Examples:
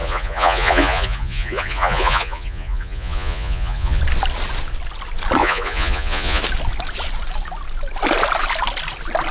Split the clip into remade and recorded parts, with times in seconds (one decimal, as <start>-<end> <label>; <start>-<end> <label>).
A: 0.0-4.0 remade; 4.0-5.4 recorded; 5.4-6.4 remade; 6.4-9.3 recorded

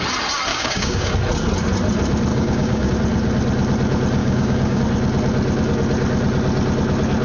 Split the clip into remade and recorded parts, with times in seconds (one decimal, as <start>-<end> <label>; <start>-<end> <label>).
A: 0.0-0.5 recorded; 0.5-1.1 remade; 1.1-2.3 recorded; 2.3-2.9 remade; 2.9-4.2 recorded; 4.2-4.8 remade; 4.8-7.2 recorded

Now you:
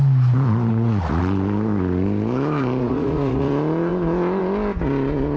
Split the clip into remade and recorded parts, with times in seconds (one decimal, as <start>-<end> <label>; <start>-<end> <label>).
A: 0.0-0.7 recorded; 0.7-1.2 remade; 1.2-2.8 recorded; 2.8-3.5 remade; 3.5-5.4 recorded

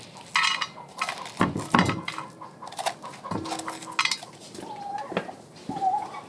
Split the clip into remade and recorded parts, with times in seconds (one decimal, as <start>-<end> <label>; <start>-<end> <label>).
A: 0.0-6.3 recorded

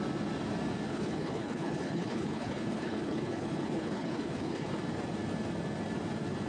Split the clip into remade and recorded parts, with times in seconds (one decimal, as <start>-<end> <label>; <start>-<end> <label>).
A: 0.0-0.9 recorded; 0.9-4.7 remade; 4.7-6.5 recorded